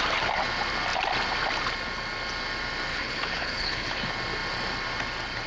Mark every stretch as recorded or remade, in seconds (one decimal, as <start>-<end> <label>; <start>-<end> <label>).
0.0-2.9 recorded; 2.9-4.0 remade; 4.0-5.5 recorded